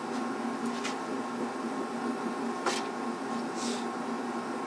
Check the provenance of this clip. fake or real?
real